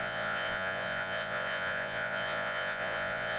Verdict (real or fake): fake